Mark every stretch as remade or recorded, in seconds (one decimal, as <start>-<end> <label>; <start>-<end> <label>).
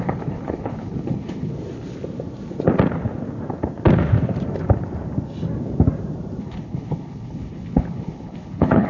0.0-1.5 remade; 1.5-6.4 recorded; 6.4-8.9 remade